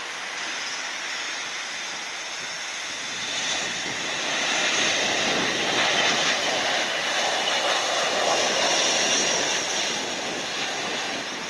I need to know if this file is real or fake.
real